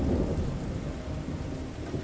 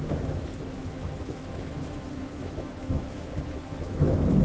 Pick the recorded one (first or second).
first